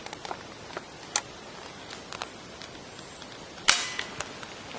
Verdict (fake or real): real